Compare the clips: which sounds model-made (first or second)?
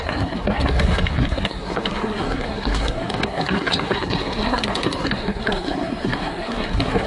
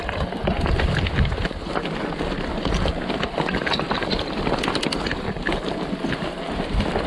first